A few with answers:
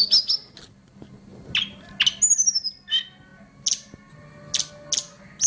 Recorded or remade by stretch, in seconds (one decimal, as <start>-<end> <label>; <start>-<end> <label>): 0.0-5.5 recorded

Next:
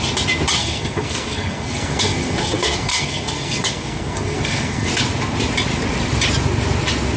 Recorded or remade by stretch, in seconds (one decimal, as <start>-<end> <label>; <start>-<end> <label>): 0.0-0.6 recorded; 0.6-4.9 remade; 4.9-7.2 recorded

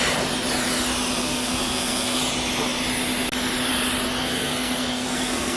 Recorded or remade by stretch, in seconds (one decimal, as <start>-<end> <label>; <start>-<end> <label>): 0.0-1.2 recorded; 1.2-2.2 remade; 2.2-4.2 recorded; 4.2-5.6 remade